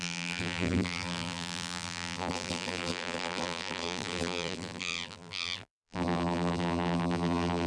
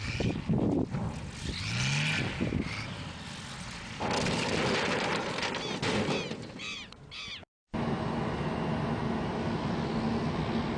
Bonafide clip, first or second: second